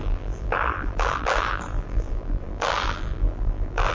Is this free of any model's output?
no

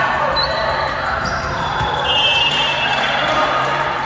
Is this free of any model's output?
no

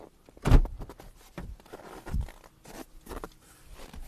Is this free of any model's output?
yes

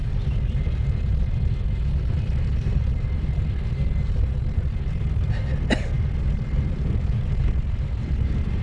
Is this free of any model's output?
yes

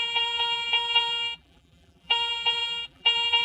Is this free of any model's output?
no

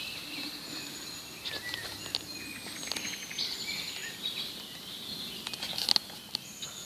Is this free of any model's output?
yes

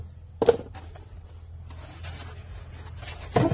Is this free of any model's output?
yes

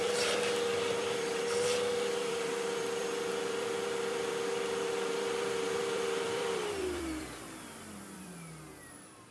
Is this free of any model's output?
no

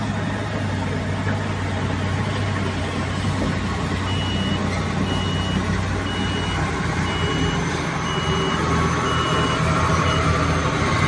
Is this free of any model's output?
yes